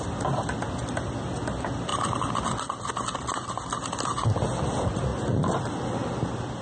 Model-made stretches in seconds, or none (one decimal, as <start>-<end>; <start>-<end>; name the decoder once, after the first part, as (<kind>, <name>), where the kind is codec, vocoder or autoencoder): 5.1-5.7 (vocoder, BigVGAN v2)